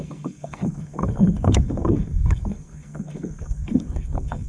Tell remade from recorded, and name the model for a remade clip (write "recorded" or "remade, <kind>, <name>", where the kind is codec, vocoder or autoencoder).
remade, codec, SNAC